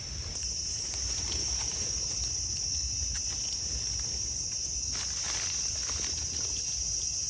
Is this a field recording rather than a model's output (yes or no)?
yes